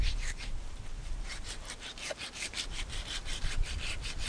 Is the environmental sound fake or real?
fake